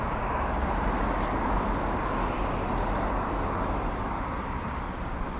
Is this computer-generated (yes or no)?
no